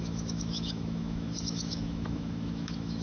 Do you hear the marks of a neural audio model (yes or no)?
yes